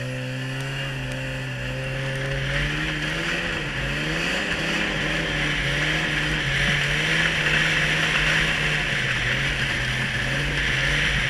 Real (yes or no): yes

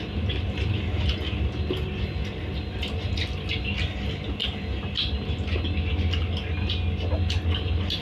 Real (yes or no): yes